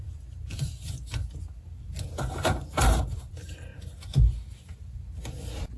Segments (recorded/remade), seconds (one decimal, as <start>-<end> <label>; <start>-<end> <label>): 0.0-1.2 remade; 1.2-3.2 recorded; 3.2-3.7 remade; 3.7-5.8 recorded